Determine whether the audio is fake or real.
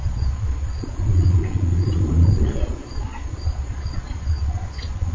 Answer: fake